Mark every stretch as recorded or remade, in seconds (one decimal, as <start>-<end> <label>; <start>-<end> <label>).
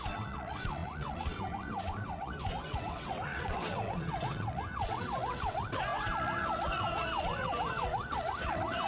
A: 0.0-8.9 remade